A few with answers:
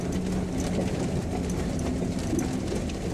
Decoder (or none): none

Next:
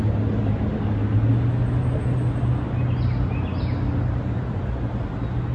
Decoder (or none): none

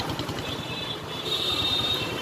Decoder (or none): vocoder, BigVGAN v2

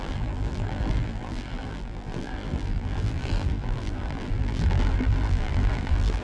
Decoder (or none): vocoder, BigVGAN v2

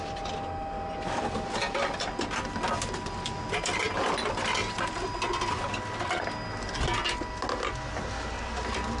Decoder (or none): none